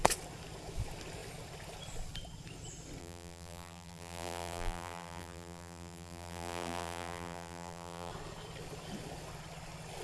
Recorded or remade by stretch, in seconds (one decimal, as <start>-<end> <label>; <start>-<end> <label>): 0.0-3.0 recorded; 3.0-8.1 remade; 8.1-10.0 recorded